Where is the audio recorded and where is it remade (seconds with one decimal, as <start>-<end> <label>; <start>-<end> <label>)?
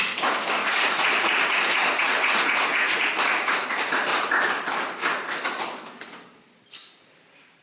0.0-0.6 recorded; 0.6-3.6 remade; 3.6-7.6 recorded